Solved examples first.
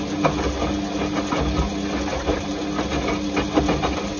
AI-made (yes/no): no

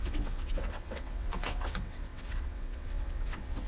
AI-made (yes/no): yes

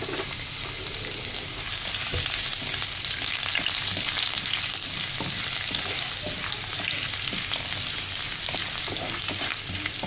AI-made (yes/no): no